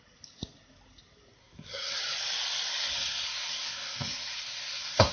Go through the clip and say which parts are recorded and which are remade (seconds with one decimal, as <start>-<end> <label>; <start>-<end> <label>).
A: 0.0-1.4 recorded; 1.4-2.0 remade; 2.0-2.7 recorded; 2.7-5.1 remade